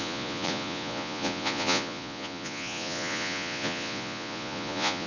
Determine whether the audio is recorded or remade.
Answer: remade